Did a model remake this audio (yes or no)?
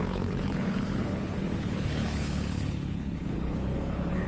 yes